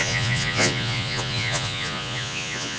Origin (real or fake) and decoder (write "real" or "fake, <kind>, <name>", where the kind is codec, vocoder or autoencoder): fake, vocoder, Vocos